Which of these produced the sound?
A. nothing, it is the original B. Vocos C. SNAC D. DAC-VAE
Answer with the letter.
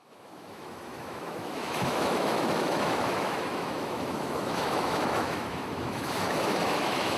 D